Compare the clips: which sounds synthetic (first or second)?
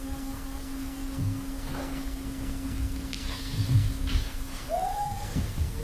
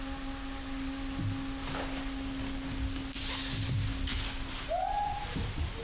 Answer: first